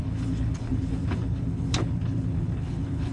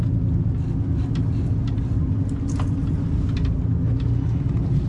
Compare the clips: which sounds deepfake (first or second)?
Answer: first